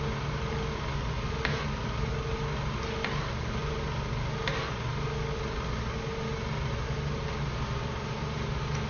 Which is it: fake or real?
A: real